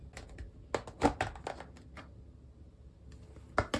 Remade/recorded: recorded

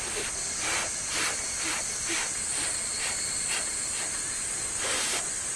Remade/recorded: recorded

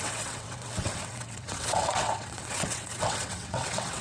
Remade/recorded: remade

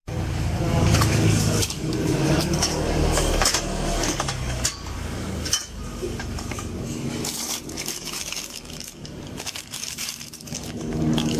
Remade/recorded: remade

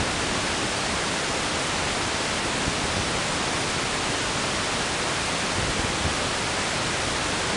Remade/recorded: recorded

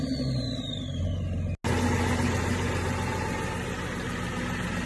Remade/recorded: recorded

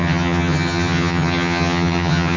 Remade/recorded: remade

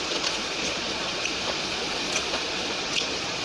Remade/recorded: remade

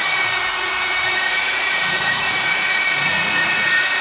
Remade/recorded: remade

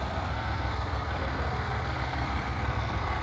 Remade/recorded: remade